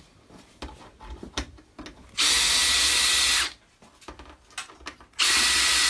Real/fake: real